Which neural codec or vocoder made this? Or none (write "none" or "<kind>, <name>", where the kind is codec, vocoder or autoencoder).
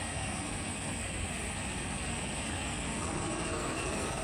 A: codec, SNAC